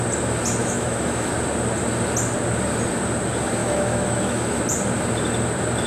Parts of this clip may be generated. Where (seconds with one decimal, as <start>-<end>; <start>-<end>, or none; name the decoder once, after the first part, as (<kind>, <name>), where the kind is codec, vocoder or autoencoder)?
0.6-1.3 (autoencoder, DAC-VAE); 3.6-4.6